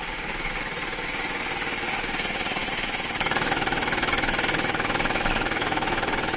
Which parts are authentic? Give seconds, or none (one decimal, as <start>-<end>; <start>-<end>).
0.0-2.6